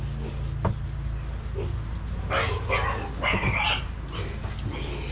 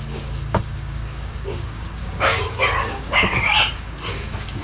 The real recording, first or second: first